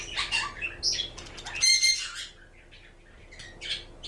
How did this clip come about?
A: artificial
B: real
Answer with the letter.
B